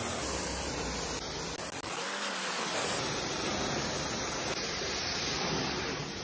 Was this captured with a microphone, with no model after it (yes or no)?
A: yes